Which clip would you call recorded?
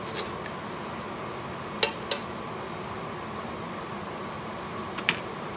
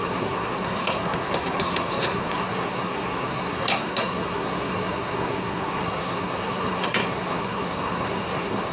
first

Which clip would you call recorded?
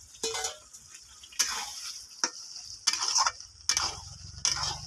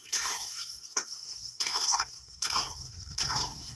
first